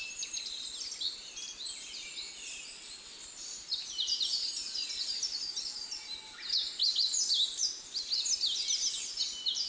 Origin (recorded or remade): recorded